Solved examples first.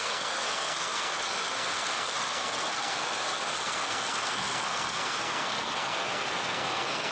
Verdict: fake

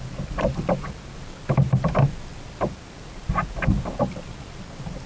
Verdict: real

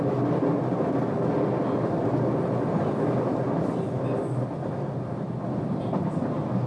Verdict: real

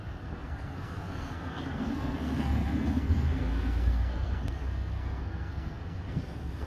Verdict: fake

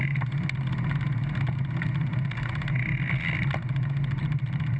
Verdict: real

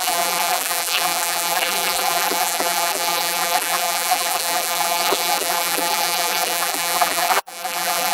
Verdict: fake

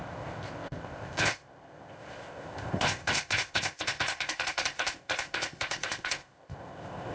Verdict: fake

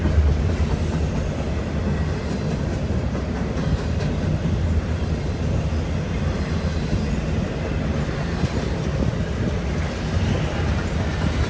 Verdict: real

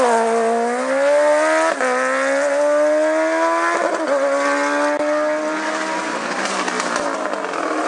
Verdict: real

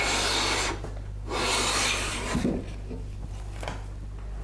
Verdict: real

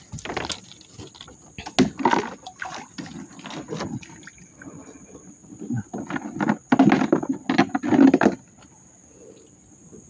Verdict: real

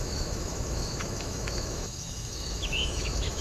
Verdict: fake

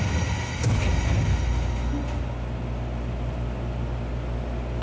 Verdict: real